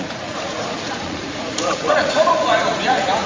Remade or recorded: remade